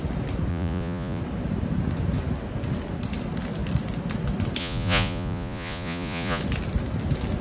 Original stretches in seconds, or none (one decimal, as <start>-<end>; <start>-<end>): 0.0-0.5; 1.2-4.6; 6.4-7.4